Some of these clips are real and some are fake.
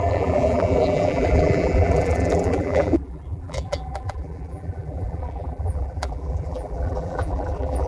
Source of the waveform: fake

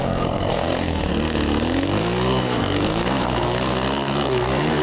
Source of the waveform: fake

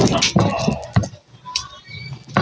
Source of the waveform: real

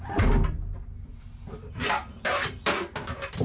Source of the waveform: real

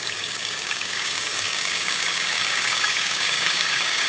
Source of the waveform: fake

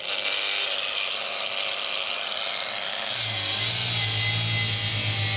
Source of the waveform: real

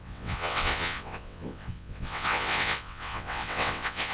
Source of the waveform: fake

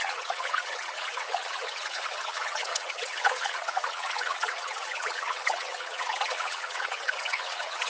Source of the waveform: fake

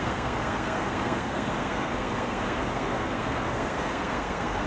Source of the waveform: fake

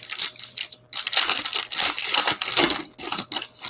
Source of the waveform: real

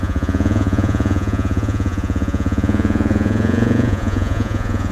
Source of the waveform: fake